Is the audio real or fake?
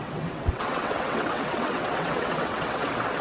fake